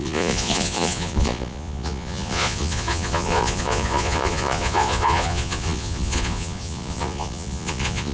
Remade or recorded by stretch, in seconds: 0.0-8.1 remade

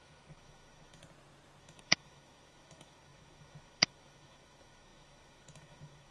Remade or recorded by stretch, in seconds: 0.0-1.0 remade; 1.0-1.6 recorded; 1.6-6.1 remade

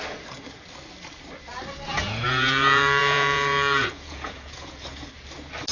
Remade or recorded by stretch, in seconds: 0.0-1.9 recorded; 1.9-5.1 remade; 5.1-5.7 recorded

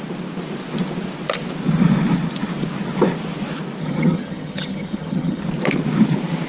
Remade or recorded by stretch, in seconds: 0.0-3.8 recorded; 3.8-5.4 remade; 5.4-6.5 recorded